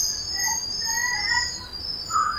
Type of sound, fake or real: real